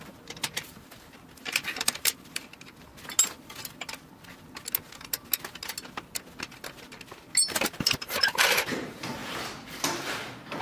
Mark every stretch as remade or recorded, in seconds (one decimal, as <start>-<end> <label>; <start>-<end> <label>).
0.0-2.9 remade; 2.9-7.9 recorded; 7.9-9.2 remade; 9.2-10.6 recorded